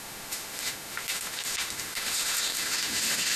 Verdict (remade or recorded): remade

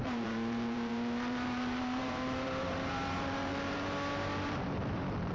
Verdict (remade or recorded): remade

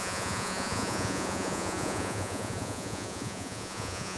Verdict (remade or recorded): remade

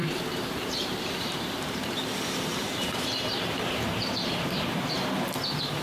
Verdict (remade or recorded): remade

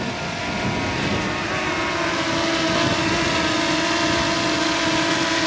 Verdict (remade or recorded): recorded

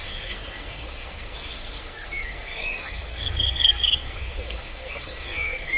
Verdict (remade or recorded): remade